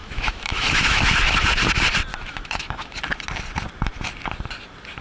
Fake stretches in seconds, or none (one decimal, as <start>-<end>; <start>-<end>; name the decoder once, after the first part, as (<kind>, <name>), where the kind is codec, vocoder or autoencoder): 0.0-1.0 (autoencoder, DAC-VAE); 2.1-3.0